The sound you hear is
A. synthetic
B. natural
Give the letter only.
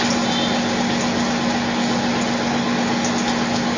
B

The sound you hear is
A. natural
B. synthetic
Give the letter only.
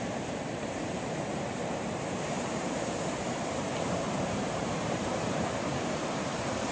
B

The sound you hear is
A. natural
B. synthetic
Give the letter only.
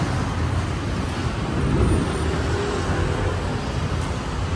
A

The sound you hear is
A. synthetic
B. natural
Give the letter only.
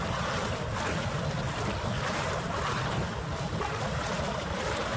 B